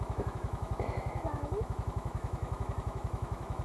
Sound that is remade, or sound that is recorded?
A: remade